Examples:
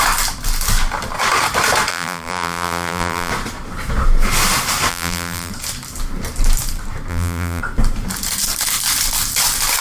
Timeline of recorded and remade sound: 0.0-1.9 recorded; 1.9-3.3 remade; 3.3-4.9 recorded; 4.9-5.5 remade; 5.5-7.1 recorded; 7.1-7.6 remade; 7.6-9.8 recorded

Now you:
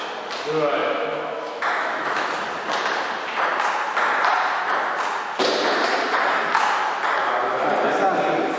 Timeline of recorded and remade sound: 0.0-0.8 recorded; 0.8-2.3 remade; 2.3-8.6 recorded